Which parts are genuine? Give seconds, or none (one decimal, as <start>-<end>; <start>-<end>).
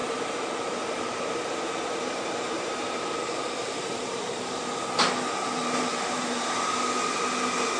4.7-5.6; 6.6-7.8